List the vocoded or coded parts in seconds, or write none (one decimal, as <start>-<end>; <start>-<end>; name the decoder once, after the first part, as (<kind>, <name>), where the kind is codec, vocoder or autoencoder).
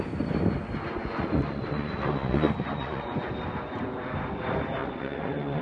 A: 1.0-3.3 (vocoder, Vocos); 4.8-5.6